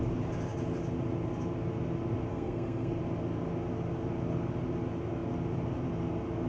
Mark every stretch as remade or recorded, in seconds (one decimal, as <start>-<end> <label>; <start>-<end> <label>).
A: 0.0-2.3 recorded; 2.3-3.0 remade; 3.0-6.5 recorded